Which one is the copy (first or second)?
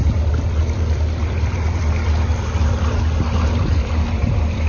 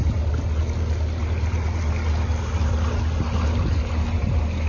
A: first